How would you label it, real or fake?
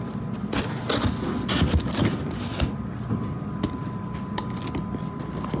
real